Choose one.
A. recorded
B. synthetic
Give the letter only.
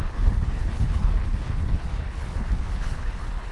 B